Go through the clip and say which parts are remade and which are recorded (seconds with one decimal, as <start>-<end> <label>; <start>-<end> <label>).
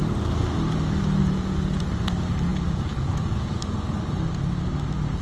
0.0-1.2 recorded; 1.2-1.8 remade; 1.8-2.5 recorded; 2.5-3.6 remade; 3.6-5.2 recorded